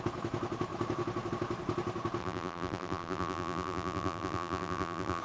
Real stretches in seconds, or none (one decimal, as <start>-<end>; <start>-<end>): 0.0-2.2